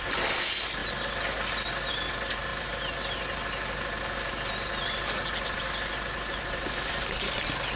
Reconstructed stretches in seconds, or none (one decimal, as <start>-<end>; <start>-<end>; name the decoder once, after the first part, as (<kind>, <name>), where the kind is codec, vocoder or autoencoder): none